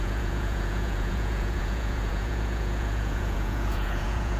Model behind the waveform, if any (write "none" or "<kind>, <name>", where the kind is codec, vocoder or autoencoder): vocoder, Vocos